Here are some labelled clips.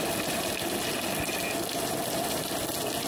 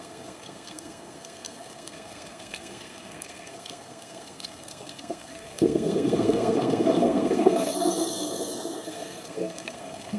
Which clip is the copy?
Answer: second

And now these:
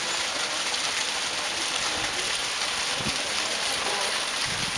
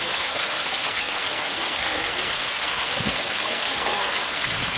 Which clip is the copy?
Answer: second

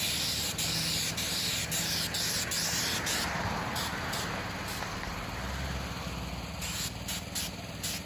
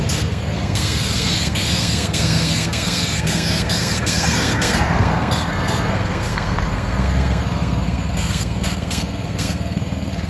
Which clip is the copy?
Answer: second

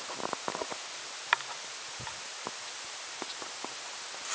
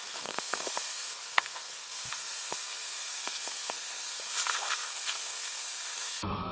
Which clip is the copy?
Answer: second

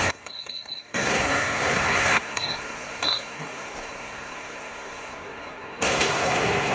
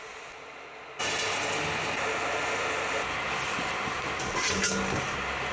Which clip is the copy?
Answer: first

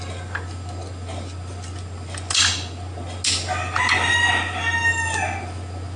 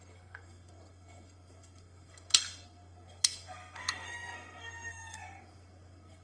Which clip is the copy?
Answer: second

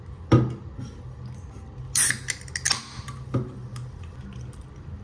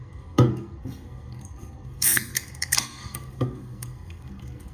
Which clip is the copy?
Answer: second